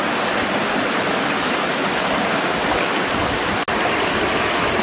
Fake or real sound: real